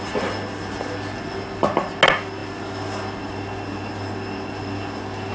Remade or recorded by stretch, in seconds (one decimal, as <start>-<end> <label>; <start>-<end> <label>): 0.0-5.3 recorded